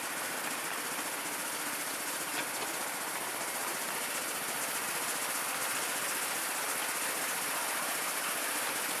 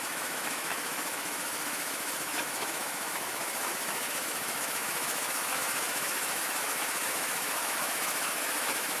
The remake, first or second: second